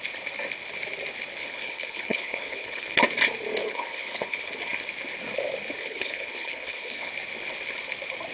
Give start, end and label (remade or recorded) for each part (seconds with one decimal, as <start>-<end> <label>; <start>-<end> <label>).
0.0-1.4 recorded; 1.4-3.0 remade; 3.0-3.6 recorded; 3.6-4.5 remade; 4.5-5.8 recorded; 5.8-7.1 remade; 7.1-8.3 recorded

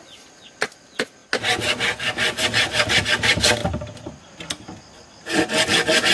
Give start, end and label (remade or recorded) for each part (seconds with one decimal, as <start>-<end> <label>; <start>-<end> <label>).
0.0-6.1 recorded

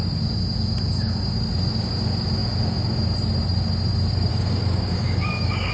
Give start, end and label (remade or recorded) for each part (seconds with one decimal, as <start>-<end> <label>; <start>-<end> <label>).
0.0-4.3 recorded; 4.3-5.7 remade

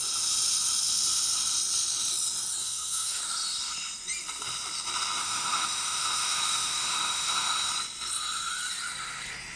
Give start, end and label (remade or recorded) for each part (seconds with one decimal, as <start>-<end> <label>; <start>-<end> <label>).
0.0-2.6 recorded; 2.6-3.2 remade; 3.2-5.2 recorded; 5.2-7.7 remade; 7.7-9.6 recorded